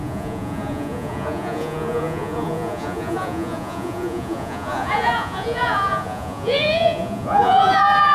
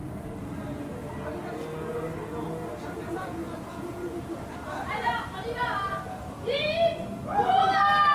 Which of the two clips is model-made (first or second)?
first